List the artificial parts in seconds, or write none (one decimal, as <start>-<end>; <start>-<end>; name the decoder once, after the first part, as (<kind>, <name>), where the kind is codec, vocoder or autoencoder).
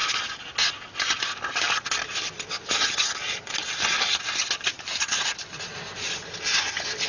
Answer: none